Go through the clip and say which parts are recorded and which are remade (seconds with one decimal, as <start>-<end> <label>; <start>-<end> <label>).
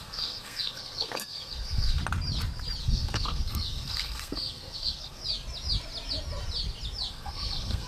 0.0-2.0 remade; 2.0-2.8 recorded; 2.8-5.2 remade; 5.2-7.1 recorded; 7.1-7.9 remade